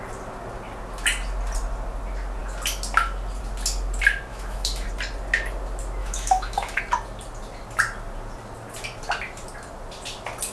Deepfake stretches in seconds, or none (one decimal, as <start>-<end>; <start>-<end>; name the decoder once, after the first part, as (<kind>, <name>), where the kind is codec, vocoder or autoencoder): 4.3-4.9 (autoencoder, DAC-VAE); 6.0-6.8

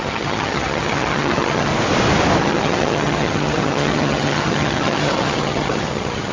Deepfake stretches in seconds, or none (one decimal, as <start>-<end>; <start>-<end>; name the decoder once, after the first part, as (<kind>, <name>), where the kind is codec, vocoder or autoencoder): 0.0-1.7 (vocoder, HiFi-GAN); 2.4-6.3

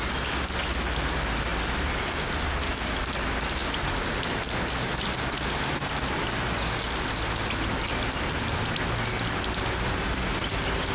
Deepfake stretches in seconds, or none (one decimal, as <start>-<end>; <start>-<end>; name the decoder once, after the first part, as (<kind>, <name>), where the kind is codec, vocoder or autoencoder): none

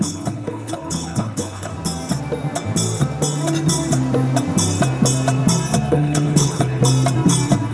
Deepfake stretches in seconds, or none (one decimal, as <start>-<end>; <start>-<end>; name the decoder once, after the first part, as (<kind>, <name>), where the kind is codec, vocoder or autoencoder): 0.0-1.7 (codec, HILCodec); 5.9-6.8

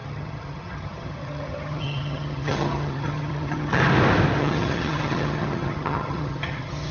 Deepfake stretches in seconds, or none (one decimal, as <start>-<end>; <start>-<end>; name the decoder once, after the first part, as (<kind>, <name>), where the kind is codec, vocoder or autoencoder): 0.0-3.8 (vocoder, HiFi-GAN); 4.4-6.9

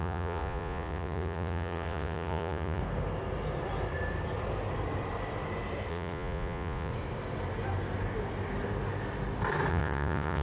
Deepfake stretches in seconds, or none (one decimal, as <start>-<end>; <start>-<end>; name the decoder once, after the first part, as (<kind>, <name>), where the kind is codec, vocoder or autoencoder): 0.0-2.8 (vocoder, Vocos); 5.9-6.9; 9.7-10.4

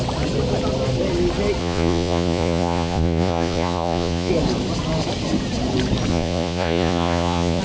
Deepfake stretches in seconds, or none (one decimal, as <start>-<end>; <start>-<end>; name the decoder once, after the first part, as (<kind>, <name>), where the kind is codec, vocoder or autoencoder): 1.6-4.3 (vocoder, Vocos); 6.1-7.6